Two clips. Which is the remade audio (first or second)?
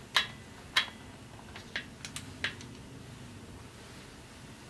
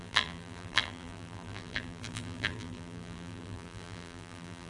second